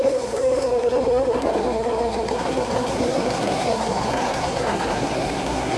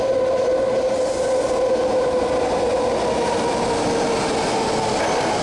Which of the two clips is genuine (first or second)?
second